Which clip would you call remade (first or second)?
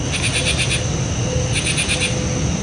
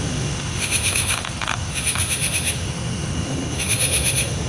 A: second